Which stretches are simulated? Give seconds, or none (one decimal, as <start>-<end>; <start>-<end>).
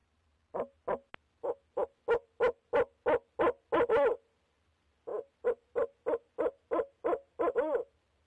none